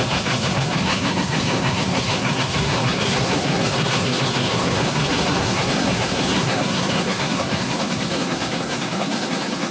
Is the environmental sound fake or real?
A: fake